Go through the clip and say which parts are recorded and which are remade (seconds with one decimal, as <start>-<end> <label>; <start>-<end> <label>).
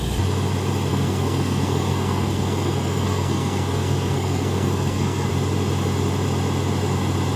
0.0-0.9 recorded; 0.9-5.3 remade; 5.3-7.4 recorded